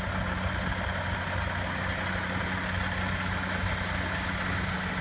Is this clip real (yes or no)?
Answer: yes